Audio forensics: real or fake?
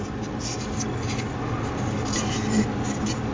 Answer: real